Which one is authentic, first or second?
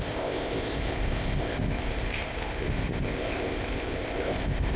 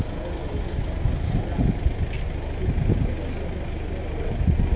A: second